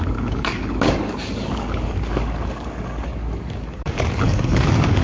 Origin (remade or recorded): remade